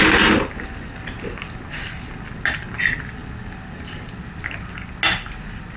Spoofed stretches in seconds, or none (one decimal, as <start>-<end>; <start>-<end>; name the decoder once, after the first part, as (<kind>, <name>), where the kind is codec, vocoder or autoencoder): none

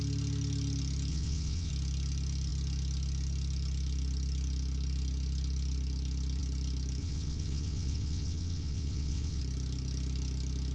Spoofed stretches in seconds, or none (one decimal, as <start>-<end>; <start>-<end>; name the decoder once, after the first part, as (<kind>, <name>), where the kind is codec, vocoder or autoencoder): 1.1-1.7 (vocoder, WaveNeXt); 7.0-9.4

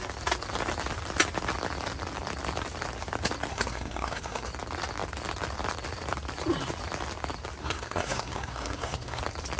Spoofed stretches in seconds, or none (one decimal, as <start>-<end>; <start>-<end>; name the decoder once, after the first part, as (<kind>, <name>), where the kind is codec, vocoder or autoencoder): 3.5-4.5 (codec, SNAC); 7.6-9.2

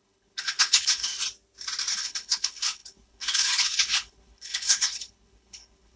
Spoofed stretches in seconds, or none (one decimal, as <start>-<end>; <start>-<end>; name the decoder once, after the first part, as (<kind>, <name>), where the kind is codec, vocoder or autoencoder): 0.0-1.1 (codec, HILCodec); 1.9-6.0

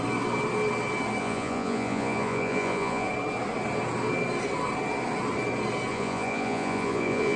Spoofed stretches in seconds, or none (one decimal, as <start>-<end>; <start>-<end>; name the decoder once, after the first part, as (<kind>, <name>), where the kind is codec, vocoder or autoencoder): 1.2-3.1 (vocoder, Vocos); 5.9-7.4